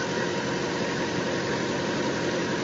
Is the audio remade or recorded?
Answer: recorded